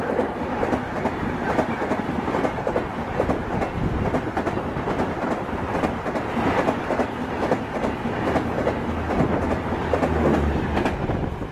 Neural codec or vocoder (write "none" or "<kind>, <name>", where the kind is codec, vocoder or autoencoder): none